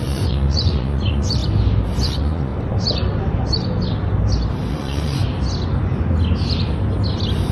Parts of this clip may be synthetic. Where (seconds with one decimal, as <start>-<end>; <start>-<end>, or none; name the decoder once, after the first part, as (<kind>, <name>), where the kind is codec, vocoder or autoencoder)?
0.0-1.4 (vocoder, Vocos); 2.0-2.5; 4.7-5.2

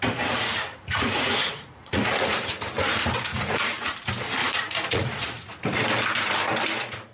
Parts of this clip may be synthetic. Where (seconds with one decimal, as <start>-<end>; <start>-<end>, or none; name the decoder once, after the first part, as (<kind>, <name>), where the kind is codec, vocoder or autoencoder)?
0.7-2.5 (vocoder, Vocos); 3.3-3.9; 4.4-5.6

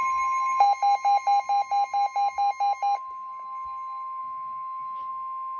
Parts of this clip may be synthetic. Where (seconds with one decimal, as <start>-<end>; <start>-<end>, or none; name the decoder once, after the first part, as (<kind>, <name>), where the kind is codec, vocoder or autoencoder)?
none

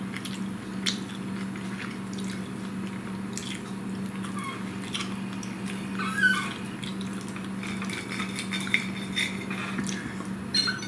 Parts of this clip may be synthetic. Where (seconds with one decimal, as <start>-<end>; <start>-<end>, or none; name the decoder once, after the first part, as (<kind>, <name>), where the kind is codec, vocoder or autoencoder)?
none

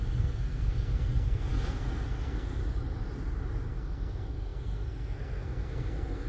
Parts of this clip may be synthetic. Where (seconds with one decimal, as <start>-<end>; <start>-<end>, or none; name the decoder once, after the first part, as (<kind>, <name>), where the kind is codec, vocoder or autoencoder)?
0.0-2.6 (codec, SNAC); 3.6-6.3